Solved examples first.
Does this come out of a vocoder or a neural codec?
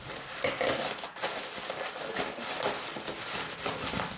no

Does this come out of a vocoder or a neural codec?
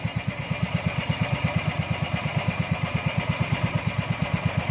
yes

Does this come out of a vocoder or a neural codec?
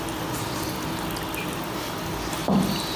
no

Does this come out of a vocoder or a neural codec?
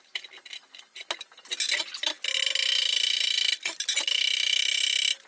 no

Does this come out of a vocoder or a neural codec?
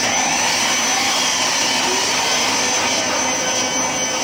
no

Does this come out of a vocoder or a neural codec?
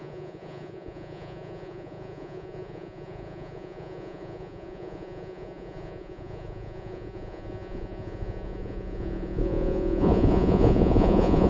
yes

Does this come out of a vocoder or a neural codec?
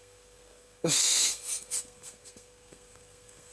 yes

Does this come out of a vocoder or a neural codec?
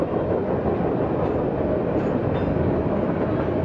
no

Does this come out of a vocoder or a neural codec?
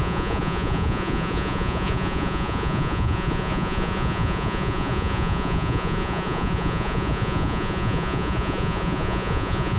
yes